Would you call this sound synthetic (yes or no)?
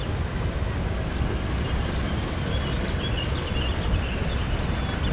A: no